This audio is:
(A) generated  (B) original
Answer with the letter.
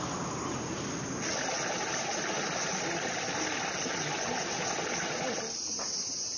B